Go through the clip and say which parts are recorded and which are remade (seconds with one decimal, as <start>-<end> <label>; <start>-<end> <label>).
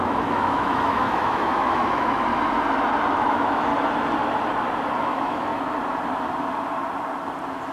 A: 0.0-2.3 remade; 2.3-3.1 recorded; 3.1-3.7 remade; 3.7-5.0 recorded; 5.0-5.5 remade; 5.5-7.7 recorded